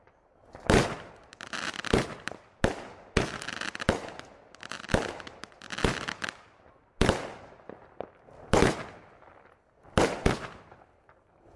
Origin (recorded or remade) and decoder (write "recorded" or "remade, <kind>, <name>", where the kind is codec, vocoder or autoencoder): recorded